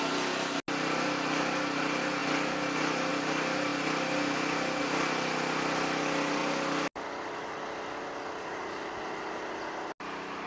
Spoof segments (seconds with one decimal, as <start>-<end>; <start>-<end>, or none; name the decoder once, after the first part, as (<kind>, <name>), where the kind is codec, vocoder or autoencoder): none